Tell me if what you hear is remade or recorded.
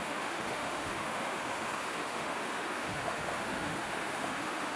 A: remade